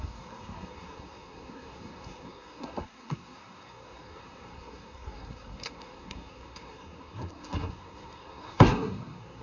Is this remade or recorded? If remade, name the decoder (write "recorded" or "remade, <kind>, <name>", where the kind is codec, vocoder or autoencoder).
remade, codec, SNAC